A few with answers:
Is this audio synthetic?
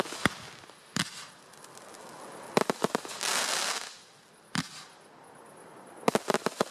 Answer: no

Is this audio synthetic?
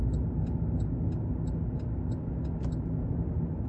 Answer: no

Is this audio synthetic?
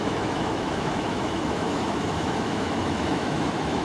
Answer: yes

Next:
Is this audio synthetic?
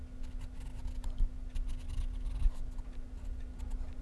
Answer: no